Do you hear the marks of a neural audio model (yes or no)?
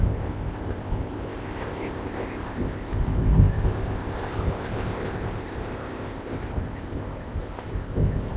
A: yes